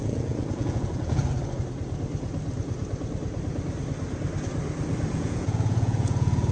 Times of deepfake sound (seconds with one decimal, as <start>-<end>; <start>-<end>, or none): 0.0-1.2; 5.1-6.5